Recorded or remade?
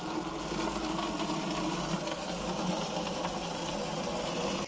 recorded